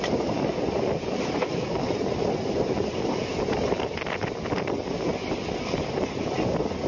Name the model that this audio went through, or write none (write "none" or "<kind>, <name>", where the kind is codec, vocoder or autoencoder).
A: none